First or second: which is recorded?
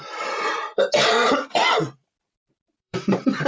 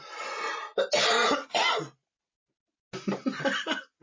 second